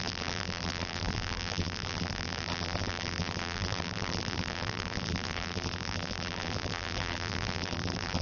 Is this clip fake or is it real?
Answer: fake